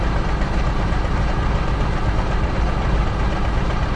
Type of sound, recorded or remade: recorded